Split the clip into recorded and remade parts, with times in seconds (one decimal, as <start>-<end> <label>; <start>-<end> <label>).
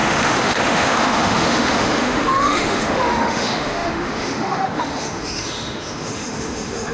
0.0-6.9 remade